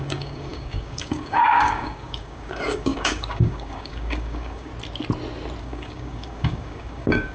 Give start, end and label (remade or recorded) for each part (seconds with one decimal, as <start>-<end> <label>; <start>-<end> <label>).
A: 0.0-4.7 remade; 4.7-5.6 recorded; 5.6-7.3 remade